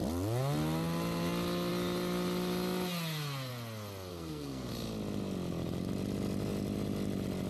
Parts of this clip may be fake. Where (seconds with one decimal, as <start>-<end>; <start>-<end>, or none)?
4.1-4.7